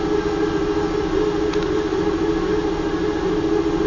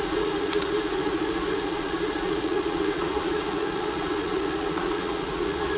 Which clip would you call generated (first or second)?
second